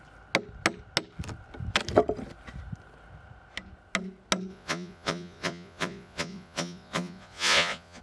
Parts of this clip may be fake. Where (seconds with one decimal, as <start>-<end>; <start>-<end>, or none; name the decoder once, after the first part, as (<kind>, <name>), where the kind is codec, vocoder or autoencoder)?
4.5-8.0 (vocoder, Vocos)